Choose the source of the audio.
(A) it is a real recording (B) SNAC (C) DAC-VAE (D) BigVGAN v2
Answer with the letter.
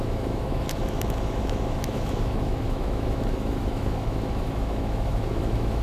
C